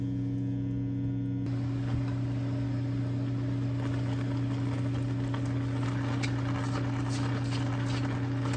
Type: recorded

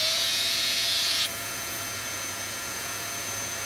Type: remade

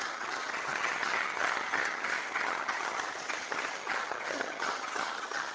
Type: remade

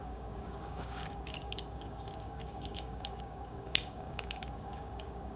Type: remade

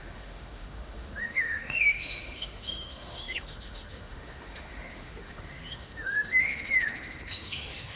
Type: remade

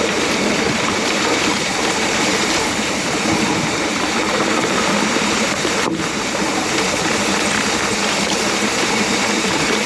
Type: remade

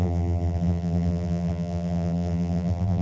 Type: remade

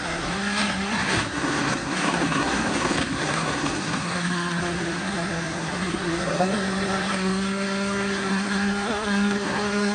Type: remade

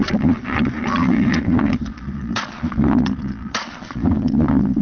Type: remade